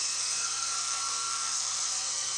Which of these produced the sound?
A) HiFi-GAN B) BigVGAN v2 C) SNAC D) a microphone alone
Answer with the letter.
C